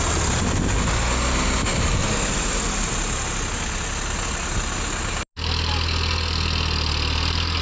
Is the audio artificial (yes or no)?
no